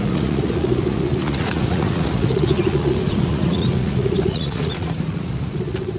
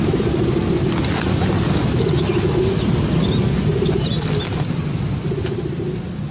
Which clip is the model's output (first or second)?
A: first